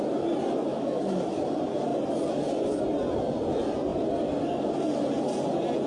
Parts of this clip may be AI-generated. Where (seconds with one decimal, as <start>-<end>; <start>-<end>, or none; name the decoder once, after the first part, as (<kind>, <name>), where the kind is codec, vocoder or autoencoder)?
0.7-1.2 (autoencoder, DAC-VAE)